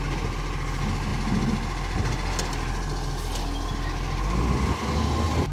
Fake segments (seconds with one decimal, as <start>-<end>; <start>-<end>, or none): none